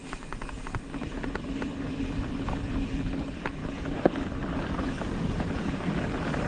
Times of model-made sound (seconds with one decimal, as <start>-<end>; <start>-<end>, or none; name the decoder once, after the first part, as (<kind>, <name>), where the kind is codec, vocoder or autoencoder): none